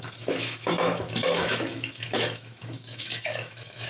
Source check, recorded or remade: remade